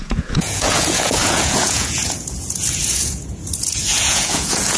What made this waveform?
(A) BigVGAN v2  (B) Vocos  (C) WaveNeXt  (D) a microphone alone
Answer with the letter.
B